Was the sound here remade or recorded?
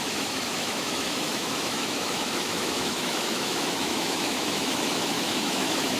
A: remade